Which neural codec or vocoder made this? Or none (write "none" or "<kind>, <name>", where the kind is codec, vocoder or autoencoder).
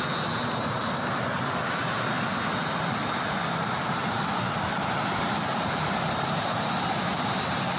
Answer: none